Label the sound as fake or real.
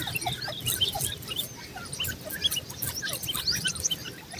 real